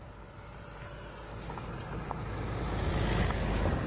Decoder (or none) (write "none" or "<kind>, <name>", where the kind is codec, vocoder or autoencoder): none